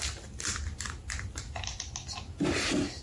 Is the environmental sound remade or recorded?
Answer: recorded